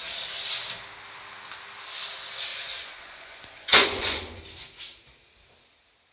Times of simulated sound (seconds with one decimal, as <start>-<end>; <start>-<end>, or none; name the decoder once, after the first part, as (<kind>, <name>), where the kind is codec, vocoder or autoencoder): 2.5-4.4 (vocoder, Vocos)